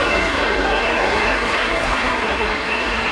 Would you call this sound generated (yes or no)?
yes